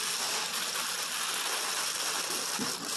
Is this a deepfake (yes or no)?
no